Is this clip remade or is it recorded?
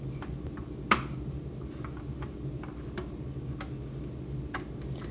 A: recorded